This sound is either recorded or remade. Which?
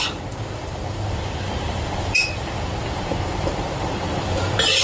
remade